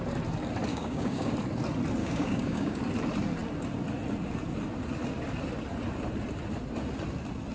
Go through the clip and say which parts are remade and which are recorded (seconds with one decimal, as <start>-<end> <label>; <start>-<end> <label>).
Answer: 0.0-0.7 recorded; 0.7-1.3 remade; 1.3-2.0 recorded; 2.0-2.8 remade; 2.8-7.5 recorded